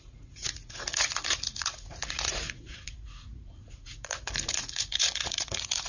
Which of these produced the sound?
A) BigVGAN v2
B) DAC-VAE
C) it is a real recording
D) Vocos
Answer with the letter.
D